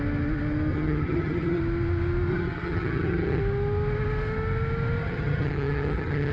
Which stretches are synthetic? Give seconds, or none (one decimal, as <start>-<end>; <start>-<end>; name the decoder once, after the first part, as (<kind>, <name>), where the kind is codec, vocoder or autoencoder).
0.7-1.6 (vocoder, HiFi-GAN); 2.3-3.4; 5.0-6.3